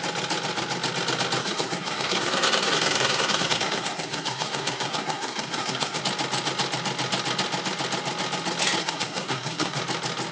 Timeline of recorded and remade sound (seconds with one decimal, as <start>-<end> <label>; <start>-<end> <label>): 0.0-1.4 recorded; 1.4-6.0 remade; 6.0-8.8 recorded; 8.8-9.8 remade; 9.8-10.3 recorded